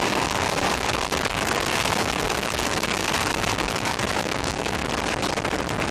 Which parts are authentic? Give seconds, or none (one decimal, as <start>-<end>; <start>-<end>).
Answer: 4.8-5.9